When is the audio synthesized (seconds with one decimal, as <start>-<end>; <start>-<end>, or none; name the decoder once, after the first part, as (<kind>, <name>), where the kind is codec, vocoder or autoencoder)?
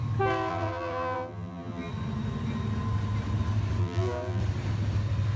0.5-1.9 (vocoder, BigVGAN v2); 3.8-4.4